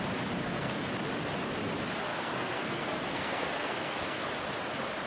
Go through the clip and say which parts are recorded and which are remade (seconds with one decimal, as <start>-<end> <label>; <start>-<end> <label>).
0.0-0.4 recorded; 0.4-0.9 remade; 0.9-2.1 recorded; 2.1-4.3 remade; 4.3-5.1 recorded